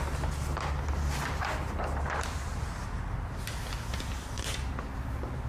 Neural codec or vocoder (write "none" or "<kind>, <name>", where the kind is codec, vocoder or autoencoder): none